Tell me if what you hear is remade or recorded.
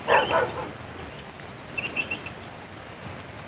recorded